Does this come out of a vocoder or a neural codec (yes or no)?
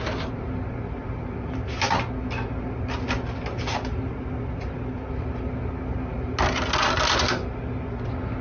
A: no